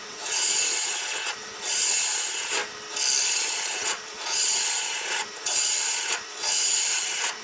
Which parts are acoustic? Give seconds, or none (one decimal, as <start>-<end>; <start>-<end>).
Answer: 2.6-3.3